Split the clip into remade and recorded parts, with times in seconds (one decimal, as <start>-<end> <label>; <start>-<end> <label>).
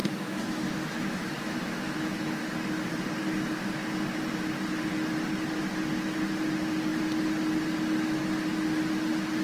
0.0-2.4 remade; 2.4-9.4 recorded